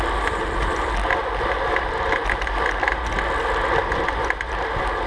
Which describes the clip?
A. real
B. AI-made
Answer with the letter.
A